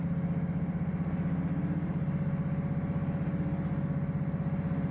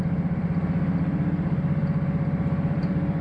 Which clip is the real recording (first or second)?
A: first